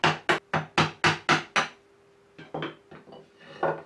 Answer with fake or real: real